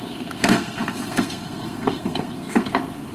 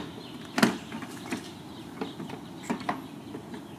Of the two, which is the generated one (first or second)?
first